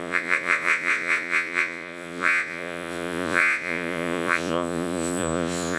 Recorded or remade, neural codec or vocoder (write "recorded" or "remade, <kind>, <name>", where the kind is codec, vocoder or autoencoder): remade, vocoder, Vocos